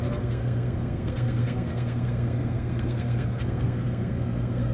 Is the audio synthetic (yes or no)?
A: yes